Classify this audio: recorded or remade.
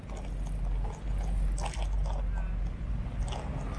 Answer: recorded